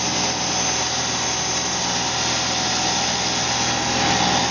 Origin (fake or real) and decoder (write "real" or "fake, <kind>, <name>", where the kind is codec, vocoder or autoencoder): real